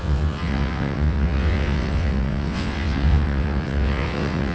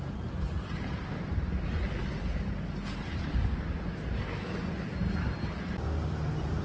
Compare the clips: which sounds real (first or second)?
second